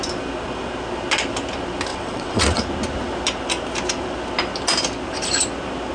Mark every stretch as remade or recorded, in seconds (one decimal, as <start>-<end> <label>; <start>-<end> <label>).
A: 0.0-1.9 recorded; 1.9-2.6 remade; 2.6-5.9 recorded